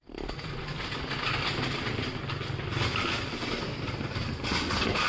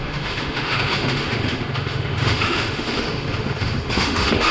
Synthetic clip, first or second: second